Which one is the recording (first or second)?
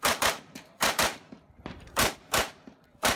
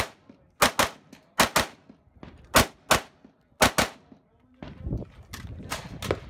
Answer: second